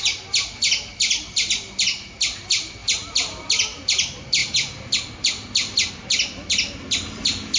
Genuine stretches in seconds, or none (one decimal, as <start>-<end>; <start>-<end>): 0.0-7.6